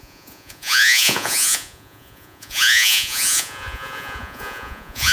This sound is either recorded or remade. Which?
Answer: remade